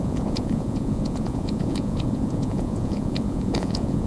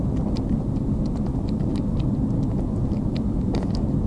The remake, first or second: first